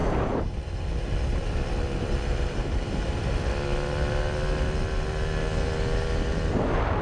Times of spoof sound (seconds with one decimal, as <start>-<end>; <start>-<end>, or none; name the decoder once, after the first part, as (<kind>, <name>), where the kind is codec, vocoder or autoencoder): 0.0-1.0 (vocoder, BigVGAN v2); 2.0-3.3